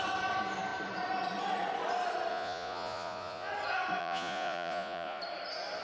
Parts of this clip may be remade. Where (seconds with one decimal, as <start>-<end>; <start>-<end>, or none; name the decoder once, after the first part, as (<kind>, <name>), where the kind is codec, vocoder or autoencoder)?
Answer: 2.3-3.5 (vocoder, Vocos); 4.0-5.2